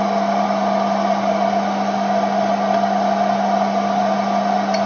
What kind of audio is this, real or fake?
real